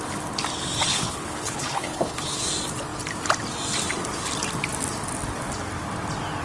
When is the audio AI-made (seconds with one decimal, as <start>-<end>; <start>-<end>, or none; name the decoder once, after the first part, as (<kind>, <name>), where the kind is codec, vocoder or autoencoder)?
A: 0.9-2.5 (codec, HILCodec)